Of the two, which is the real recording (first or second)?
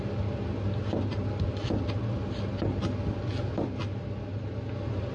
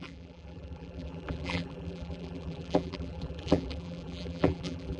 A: first